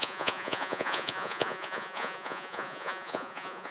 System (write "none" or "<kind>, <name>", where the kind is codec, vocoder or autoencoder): vocoder, Vocos